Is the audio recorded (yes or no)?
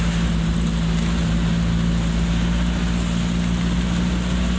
yes